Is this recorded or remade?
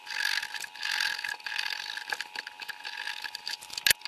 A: recorded